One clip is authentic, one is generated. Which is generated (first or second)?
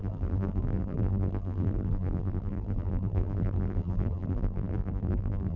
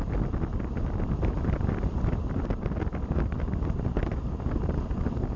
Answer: first